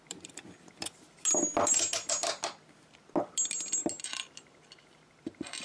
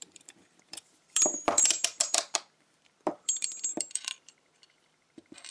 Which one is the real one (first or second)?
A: first